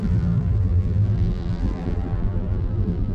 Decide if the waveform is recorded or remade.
remade